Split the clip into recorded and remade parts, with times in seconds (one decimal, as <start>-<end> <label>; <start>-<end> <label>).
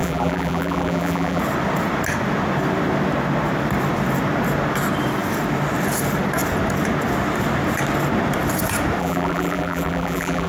0.0-1.4 remade; 1.4-9.0 recorded; 9.0-10.5 remade